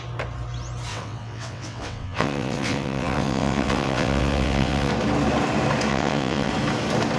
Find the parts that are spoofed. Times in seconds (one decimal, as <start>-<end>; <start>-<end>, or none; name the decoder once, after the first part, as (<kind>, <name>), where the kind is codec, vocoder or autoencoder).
0.9-4.9 (vocoder, WaveNeXt); 5.9-6.5